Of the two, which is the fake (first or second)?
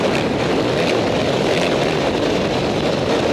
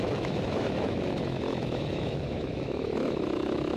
second